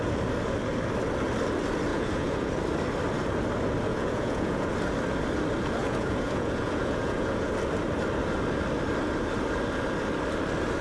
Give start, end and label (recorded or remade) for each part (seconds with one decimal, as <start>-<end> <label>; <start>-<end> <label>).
0.0-1.9 recorded; 1.9-2.5 remade; 2.5-3.9 recorded; 3.9-4.7 remade; 4.7-5.8 recorded; 5.8-7.5 remade; 7.5-10.8 recorded

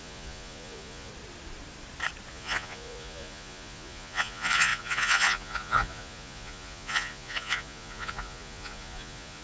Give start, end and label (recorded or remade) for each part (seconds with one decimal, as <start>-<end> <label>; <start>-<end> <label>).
0.0-1.1 remade; 1.1-2.3 recorded; 2.3-9.4 remade

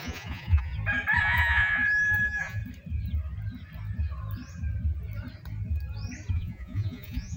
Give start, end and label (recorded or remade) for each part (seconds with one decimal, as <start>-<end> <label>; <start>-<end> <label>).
0.0-0.7 remade; 0.7-1.2 recorded; 1.2-2.6 remade; 2.6-6.3 recorded; 6.3-7.4 remade

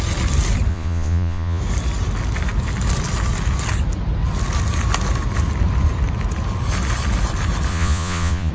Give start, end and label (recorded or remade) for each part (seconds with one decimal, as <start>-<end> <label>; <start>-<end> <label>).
0.0-0.7 recorded; 0.7-1.6 remade; 1.6-7.7 recorded; 7.7-8.5 remade

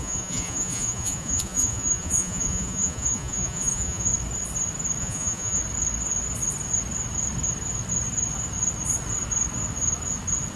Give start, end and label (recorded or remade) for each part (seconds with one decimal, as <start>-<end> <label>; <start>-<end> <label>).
0.0-4.1 remade; 4.1-5.0 recorded; 5.0-5.6 remade; 5.6-10.6 recorded